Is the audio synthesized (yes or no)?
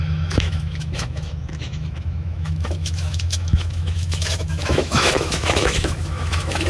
yes